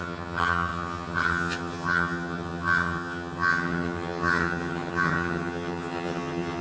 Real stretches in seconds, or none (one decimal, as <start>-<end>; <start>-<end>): none

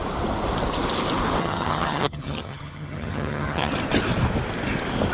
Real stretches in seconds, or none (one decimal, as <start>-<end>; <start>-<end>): 0.0-1.4; 3.7-5.1

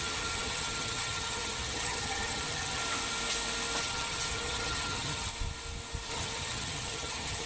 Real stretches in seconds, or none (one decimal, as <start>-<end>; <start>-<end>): 2.8-3.8; 5.3-6.1